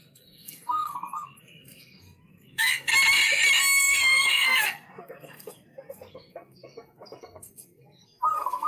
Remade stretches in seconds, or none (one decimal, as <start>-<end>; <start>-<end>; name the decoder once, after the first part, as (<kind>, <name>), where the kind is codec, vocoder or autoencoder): 0.0-2.9 (codec, SNAC); 3.8-8.7